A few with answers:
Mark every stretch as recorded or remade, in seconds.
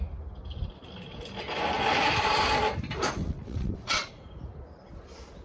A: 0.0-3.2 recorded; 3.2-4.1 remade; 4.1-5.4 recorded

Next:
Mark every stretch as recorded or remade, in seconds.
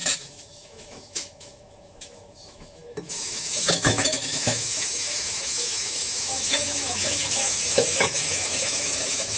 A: 0.0-9.4 remade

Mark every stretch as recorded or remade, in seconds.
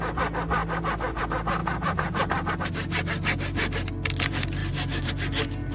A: 0.0-0.6 recorded; 0.6-1.2 remade; 1.2-1.6 recorded; 1.6-2.5 remade; 2.5-4.6 recorded; 4.6-5.1 remade; 5.1-5.7 recorded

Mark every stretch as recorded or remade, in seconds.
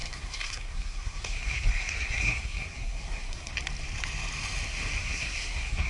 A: 0.0-3.5 remade; 3.5-5.0 recorded; 5.0-5.9 remade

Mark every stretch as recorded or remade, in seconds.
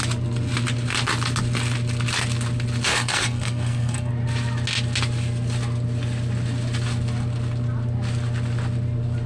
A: 0.0-2.9 recorded; 2.9-4.1 remade; 4.1-9.3 recorded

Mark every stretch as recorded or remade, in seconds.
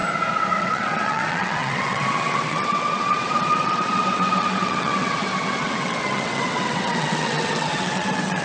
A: 0.0-0.6 recorded; 0.6-8.4 remade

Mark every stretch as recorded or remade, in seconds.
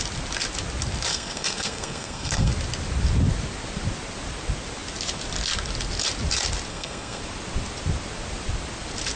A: 0.0-1.1 recorded; 1.1-2.5 remade; 2.5-6.7 recorded; 6.7-7.2 remade; 7.2-9.2 recorded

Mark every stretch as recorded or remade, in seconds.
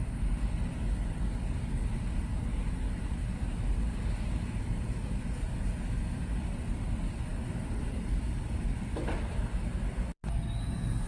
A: 0.0-11.1 recorded